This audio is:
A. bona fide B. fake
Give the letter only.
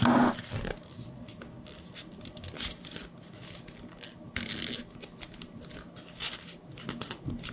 A